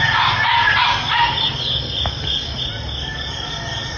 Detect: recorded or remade recorded